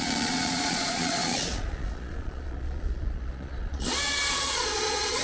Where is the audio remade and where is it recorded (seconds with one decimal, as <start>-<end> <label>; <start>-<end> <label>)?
0.0-5.2 remade